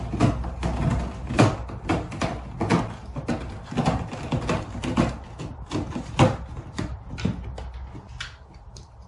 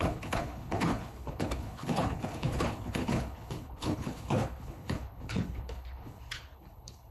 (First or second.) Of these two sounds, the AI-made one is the second